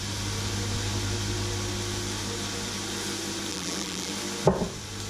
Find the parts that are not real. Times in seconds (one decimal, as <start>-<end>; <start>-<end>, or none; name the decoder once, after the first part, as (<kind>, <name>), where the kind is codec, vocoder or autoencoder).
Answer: 3.5-4.1 (vocoder, BigVGAN v2)